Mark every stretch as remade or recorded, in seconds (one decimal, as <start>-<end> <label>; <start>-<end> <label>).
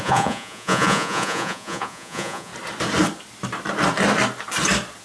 0.0-2.5 remade; 2.5-5.0 recorded